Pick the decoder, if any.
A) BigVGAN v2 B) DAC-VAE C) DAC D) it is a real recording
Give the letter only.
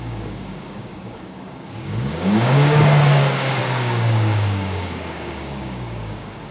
C